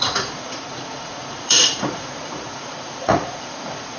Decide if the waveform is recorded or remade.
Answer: remade